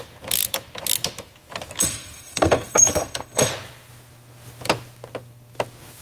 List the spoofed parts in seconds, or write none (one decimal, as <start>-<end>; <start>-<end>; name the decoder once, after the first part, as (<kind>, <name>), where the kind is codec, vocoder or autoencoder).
1.8-3.5 (codec, SNAC)